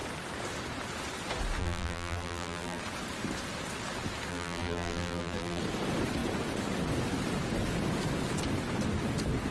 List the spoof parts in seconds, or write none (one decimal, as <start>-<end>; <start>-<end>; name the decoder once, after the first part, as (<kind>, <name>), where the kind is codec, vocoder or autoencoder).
1.6-2.8 (vocoder, BigVGAN v2); 4.3-5.6